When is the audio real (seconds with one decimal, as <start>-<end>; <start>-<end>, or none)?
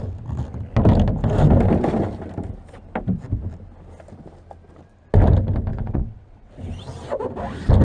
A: 0.0-5.7; 6.5-7.8